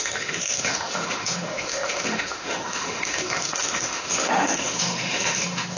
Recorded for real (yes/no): no